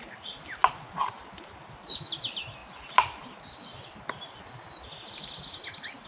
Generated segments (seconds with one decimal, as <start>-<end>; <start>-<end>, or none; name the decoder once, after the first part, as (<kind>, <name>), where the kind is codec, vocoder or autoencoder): none